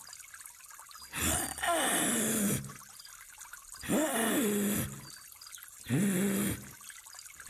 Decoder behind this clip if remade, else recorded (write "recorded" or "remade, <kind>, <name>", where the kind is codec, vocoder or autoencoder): recorded